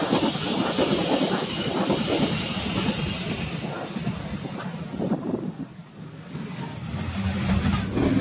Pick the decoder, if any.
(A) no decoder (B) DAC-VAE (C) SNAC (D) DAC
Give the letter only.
A